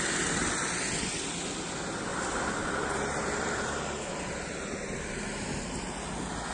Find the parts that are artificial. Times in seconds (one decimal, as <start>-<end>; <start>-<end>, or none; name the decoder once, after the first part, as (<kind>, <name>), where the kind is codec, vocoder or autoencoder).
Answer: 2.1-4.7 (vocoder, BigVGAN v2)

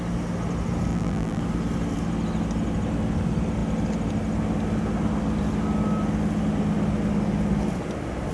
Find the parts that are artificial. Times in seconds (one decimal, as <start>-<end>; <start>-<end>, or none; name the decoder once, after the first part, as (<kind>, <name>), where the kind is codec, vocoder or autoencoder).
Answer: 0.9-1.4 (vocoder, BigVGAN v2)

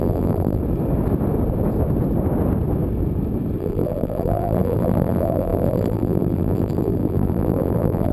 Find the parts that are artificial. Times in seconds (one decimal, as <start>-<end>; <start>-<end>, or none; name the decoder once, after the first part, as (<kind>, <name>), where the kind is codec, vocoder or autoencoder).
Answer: 0.0-0.6 (vocoder, BigVGAN v2); 3.6-8.1

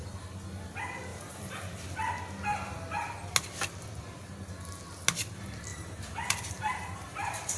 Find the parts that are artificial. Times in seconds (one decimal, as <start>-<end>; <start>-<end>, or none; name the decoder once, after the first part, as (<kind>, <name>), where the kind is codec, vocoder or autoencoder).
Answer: 1.1-1.9 (vocoder, BigVGAN v2); 5.7-7.6

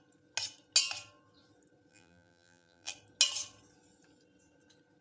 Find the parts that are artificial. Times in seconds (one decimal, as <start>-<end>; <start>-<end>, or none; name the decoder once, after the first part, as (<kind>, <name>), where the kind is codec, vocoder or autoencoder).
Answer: 1.9-2.9 (vocoder, BigVGAN v2)